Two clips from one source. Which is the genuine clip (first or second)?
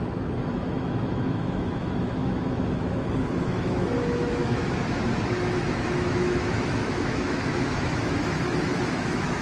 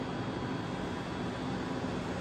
second